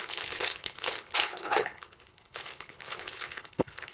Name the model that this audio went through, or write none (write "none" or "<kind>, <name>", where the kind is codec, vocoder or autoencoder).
codec, HILCodec